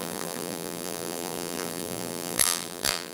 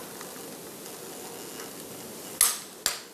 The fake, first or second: first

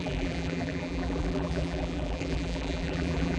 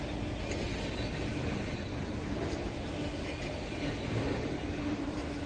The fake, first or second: first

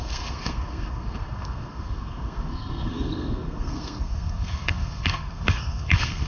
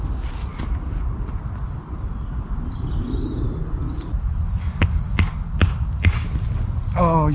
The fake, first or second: first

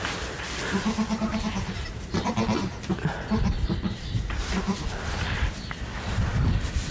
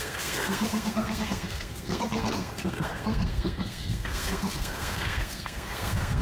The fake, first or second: second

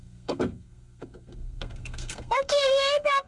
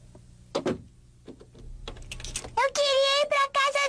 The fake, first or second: first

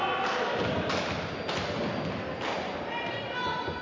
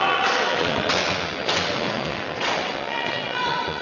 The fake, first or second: second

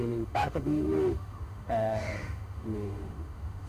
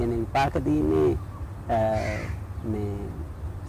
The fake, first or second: first